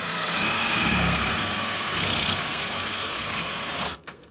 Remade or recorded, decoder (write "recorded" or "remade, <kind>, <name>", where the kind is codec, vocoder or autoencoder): remade, codec, SNAC